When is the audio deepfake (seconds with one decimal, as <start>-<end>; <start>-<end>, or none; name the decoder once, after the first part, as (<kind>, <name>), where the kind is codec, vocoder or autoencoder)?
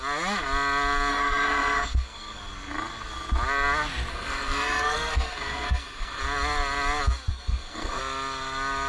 1.1-2.4 (codec, SNAC); 4.1-6.2; 7.3-8.0